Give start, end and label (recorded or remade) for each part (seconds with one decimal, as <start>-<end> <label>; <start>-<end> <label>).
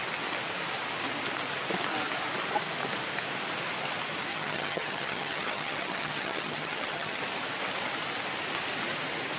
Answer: 0.0-4.3 recorded; 4.3-7.2 remade; 7.2-9.4 recorded